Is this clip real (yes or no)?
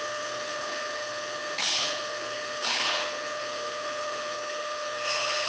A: no